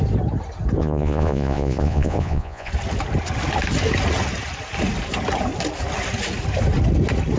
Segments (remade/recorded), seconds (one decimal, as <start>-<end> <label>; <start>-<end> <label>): 0.0-0.8 recorded; 0.8-2.7 remade; 2.7-7.4 recorded